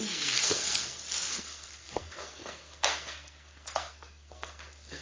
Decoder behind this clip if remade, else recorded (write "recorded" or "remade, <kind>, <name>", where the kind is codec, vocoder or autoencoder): remade, codec, SNAC